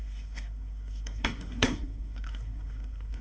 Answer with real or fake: fake